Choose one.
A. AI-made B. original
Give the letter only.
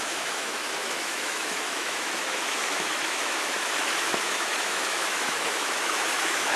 A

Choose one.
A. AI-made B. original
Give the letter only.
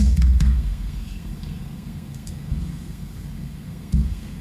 A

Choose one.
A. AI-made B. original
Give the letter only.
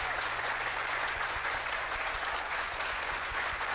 A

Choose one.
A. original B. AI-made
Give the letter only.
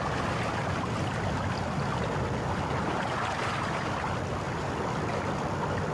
A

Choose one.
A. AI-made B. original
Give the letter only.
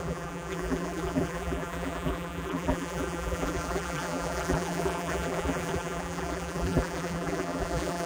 A